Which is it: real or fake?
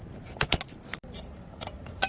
fake